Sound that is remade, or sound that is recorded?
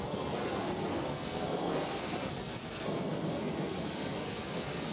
remade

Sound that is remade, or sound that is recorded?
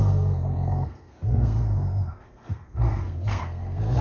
remade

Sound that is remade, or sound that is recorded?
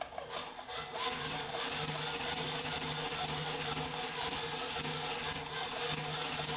recorded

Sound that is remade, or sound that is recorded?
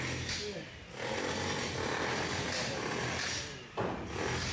recorded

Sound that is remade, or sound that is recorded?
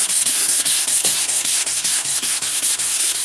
remade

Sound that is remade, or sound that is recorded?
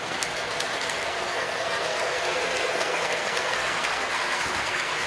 remade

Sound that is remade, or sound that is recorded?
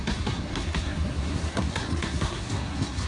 remade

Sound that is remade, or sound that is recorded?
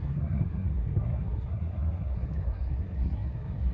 remade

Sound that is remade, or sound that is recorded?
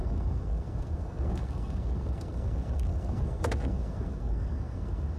remade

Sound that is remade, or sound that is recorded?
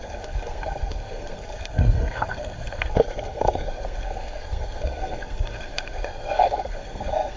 remade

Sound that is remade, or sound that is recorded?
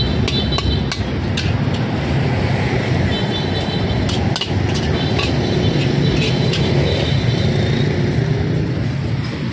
recorded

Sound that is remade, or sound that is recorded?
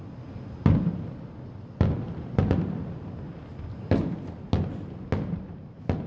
recorded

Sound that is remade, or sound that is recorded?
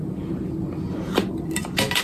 recorded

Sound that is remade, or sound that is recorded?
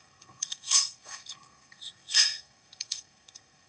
remade